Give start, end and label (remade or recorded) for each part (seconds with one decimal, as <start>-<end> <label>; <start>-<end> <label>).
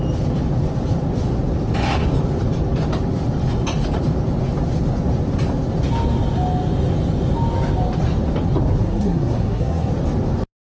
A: 0.0-8.9 recorded; 8.9-9.9 remade; 9.9-10.6 recorded